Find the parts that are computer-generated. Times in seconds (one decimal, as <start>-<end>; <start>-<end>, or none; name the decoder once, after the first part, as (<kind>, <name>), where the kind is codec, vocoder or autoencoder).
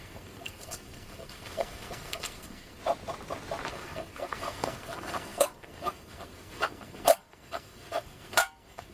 0.0-2.8 (codec, SNAC); 3.7-8.9